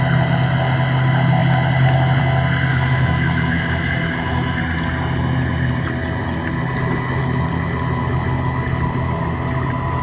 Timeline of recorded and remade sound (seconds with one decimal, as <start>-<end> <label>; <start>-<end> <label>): 0.0-2.7 recorded; 2.7-4.6 remade; 4.6-10.0 recorded